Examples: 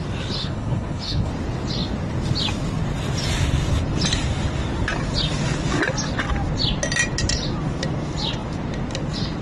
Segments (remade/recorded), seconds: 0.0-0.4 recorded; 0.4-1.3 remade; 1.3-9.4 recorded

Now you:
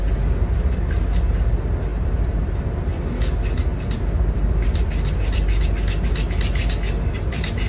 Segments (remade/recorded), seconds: 0.0-1.9 recorded; 1.9-3.0 remade; 3.0-3.7 recorded; 3.7-5.6 remade; 5.6-7.7 recorded

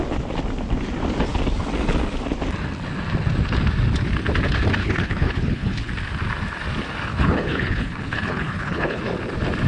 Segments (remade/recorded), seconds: 0.0-4.8 recorded; 4.8-5.9 remade; 5.9-7.1 recorded; 7.1-9.0 remade; 9.0-9.7 recorded